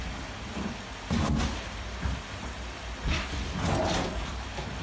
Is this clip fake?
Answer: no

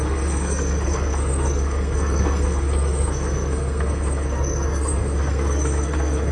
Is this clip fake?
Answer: yes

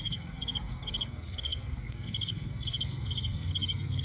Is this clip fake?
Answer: yes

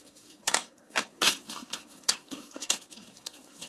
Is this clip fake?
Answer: yes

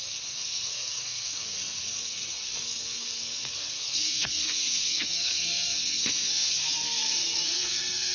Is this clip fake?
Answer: yes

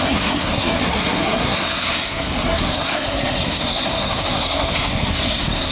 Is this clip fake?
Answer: yes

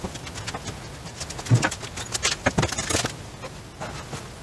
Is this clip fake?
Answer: no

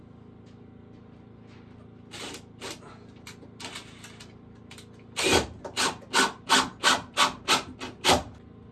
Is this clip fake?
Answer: no